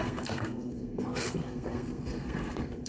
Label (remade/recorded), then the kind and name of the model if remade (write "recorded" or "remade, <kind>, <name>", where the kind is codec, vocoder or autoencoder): remade, codec, SNAC